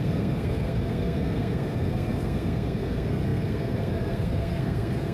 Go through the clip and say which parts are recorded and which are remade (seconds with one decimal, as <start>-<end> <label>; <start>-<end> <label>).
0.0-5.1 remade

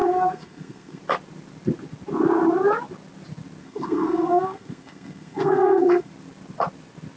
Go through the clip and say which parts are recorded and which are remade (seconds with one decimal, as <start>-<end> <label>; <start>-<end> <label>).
0.0-1.0 remade; 1.0-3.6 recorded; 3.6-6.1 remade; 6.1-7.2 recorded

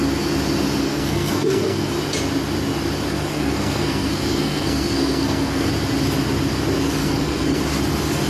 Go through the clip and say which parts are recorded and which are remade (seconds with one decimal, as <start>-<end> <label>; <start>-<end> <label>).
0.0-0.8 recorded; 0.8-1.9 remade; 1.9-3.1 recorded; 3.1-5.7 remade; 5.7-7.0 recorded; 7.0-7.6 remade; 7.6-8.3 recorded